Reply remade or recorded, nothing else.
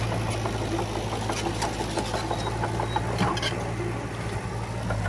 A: recorded